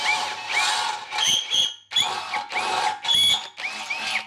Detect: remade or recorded recorded